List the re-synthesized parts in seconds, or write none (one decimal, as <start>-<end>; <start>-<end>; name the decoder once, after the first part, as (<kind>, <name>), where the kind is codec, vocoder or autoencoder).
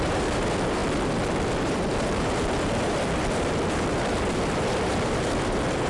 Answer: 0.0-0.8 (vocoder, BigVGAN v2); 1.3-5.9